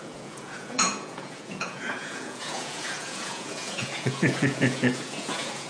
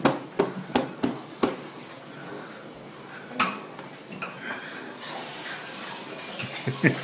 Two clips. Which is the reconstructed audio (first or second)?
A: first